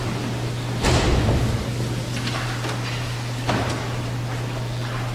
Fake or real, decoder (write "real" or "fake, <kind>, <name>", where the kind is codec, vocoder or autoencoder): real